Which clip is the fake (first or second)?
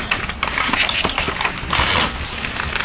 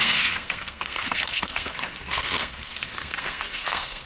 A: second